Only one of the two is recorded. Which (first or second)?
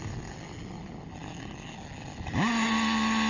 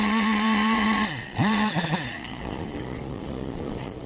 first